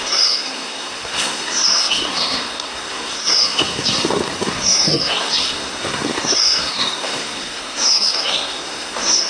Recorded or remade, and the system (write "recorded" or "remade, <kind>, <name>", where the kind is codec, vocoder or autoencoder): remade, codec, SNAC